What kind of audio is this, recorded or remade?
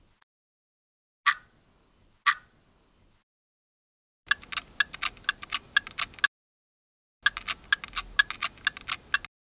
recorded